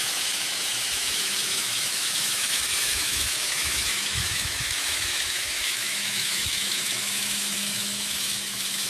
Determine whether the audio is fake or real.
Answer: fake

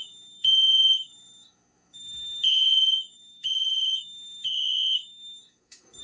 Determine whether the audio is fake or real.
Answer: fake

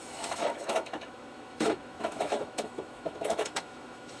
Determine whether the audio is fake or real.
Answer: fake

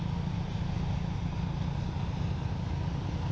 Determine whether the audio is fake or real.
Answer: real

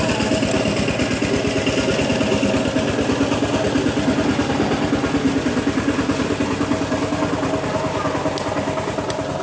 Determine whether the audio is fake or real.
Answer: real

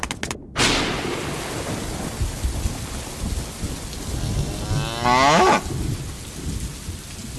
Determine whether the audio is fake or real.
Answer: real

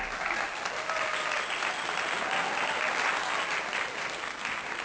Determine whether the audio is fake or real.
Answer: real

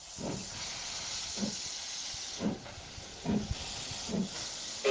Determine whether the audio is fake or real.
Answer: real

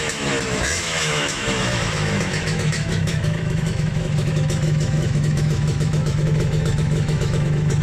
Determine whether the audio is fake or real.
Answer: fake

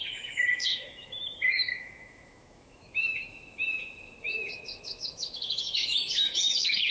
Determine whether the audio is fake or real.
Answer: fake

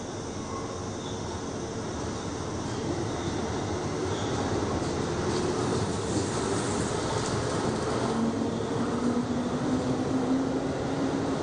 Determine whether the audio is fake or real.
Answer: real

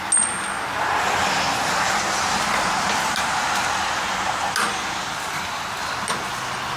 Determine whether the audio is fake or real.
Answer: real